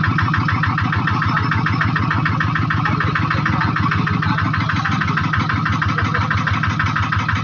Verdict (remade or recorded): recorded